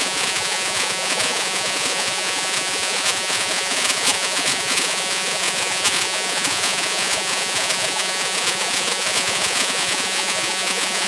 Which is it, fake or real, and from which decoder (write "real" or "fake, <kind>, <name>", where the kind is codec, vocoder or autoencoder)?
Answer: fake, vocoder, Vocos